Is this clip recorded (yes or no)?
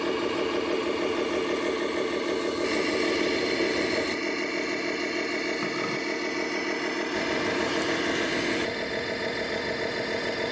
yes